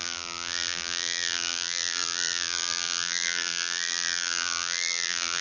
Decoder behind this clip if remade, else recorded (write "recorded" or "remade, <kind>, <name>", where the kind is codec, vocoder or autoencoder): remade, vocoder, BigVGAN v2